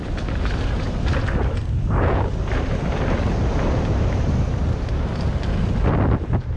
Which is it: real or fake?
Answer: real